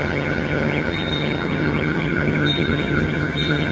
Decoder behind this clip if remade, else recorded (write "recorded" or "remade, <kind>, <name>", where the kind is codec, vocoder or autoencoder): remade, vocoder, HiFi-GAN